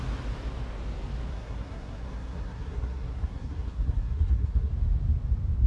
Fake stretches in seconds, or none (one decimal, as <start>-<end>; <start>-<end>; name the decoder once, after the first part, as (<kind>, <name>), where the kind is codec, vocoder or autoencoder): 1.3-4.7 (codec, SNAC)